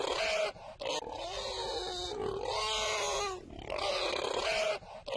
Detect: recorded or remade recorded